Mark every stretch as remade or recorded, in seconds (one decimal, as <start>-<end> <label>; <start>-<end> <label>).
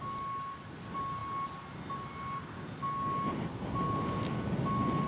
0.0-5.1 recorded